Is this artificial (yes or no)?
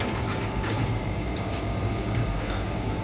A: yes